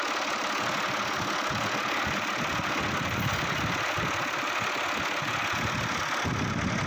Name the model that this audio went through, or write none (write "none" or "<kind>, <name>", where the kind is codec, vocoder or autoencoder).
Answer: none